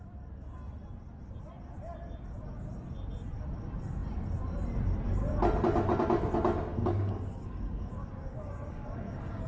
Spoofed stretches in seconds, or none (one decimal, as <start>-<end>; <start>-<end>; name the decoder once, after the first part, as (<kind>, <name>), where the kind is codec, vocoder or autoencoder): 6.8-9.5 (codec, DAC)